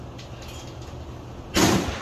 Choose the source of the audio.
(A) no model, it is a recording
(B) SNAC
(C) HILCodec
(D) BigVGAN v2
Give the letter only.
A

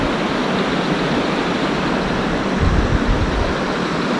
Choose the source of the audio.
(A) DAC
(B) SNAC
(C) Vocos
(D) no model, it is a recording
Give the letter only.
D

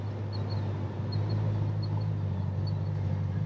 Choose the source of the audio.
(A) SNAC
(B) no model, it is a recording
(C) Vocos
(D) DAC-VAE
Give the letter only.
B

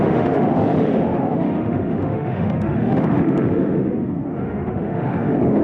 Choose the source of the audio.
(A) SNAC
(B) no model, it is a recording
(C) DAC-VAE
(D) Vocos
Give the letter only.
C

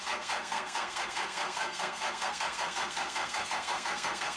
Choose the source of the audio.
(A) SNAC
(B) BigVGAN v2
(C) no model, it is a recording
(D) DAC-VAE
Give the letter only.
A